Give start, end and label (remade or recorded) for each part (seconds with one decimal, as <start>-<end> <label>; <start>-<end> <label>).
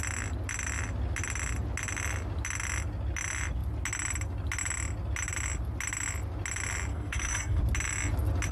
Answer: 0.0-6.9 recorded; 6.9-7.6 remade; 7.6-8.5 recorded